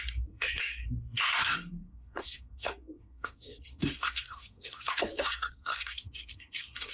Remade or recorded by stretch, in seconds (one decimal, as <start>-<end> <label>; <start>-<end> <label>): 0.0-6.9 remade